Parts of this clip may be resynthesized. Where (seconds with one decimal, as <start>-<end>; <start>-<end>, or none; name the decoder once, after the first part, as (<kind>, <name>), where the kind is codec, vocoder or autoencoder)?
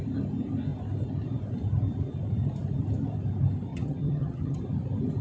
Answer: 3.7-4.6 (vocoder, HiFi-GAN)